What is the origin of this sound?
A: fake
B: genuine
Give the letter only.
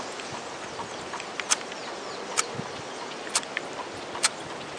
B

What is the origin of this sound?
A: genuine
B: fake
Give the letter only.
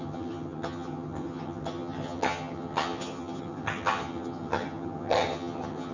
B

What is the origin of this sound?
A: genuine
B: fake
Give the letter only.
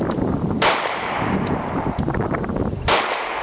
B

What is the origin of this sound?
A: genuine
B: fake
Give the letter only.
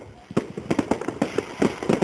A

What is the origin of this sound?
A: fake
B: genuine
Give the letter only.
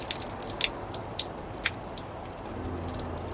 B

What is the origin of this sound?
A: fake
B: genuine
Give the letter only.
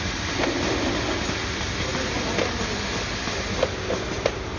B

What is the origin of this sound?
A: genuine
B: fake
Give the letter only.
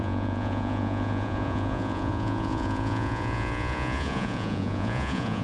B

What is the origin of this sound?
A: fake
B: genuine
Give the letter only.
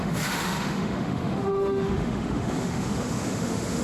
A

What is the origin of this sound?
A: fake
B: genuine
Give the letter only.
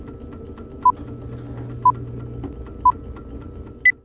B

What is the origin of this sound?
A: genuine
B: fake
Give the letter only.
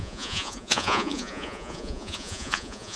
B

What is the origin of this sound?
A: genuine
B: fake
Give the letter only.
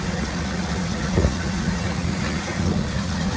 B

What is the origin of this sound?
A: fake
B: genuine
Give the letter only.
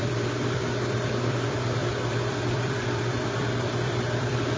A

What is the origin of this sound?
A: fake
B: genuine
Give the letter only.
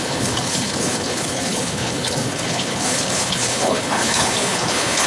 A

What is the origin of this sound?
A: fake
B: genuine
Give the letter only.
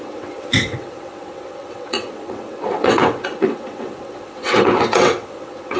A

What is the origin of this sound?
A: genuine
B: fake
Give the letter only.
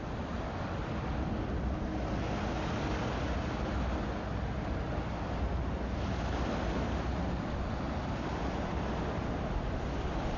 A